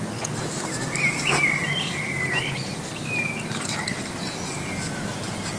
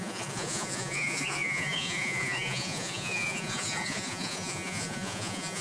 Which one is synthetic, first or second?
second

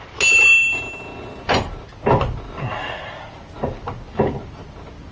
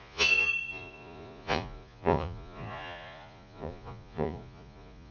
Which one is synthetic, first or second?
second